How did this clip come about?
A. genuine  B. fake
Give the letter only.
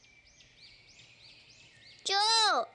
A